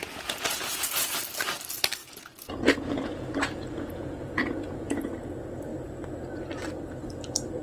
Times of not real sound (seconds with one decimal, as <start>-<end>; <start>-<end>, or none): 0.0-1.1; 2.0-5.1